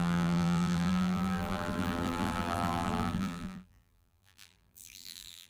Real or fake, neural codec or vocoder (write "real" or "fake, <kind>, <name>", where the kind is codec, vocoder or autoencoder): fake, vocoder, BigVGAN v2